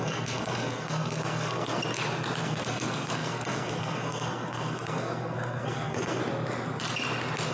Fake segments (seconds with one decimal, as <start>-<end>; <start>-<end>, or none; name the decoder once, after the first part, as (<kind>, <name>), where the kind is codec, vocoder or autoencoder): 0.0-1.8 (codec, SNAC); 2.4-6.2